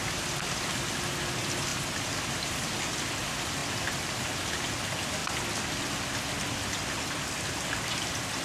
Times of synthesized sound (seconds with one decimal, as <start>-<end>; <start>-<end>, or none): none